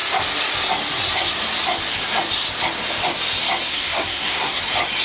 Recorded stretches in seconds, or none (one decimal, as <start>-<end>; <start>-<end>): 0.0-3.7; 4.6-5.0